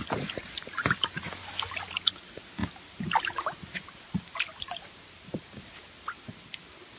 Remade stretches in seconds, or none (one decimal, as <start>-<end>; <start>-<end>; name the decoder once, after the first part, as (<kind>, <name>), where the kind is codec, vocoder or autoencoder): none